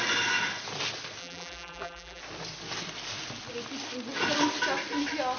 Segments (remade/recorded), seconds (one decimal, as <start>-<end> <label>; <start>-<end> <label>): 0.0-1.2 recorded; 1.2-2.2 remade; 2.2-5.4 recorded